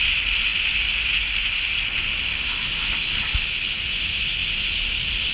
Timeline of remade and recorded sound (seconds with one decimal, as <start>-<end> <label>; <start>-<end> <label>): 0.0-5.3 recorded